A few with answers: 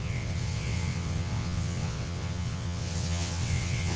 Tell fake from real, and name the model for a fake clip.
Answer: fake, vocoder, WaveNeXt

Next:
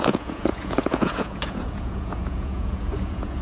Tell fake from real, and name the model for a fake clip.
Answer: fake, vocoder, Vocos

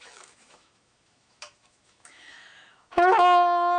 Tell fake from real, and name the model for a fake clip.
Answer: fake, autoencoder, DAC-VAE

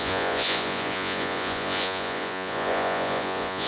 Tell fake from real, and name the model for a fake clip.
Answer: fake, vocoder, Vocos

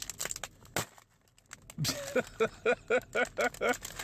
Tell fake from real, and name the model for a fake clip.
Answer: real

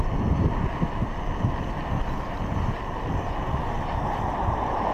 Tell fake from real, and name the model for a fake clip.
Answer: real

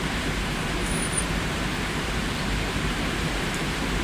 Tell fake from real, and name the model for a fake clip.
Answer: fake, vocoder, BigVGAN v2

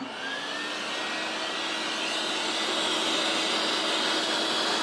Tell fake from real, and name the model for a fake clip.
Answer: real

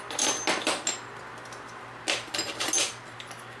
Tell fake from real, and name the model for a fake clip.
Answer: real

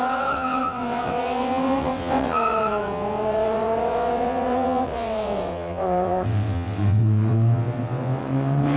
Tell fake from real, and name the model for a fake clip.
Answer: fake, vocoder, WaveNeXt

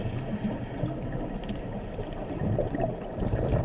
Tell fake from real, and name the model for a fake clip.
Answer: real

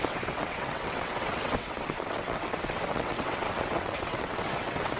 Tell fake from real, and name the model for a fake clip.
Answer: fake, vocoder, WaveNeXt